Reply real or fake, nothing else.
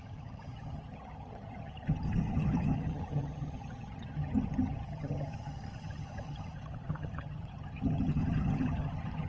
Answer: fake